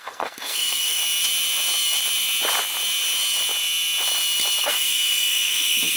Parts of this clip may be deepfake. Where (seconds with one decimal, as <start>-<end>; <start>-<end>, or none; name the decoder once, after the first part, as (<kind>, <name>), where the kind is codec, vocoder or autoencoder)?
0.0-1.0 (codec, SNAC); 4.6-6.0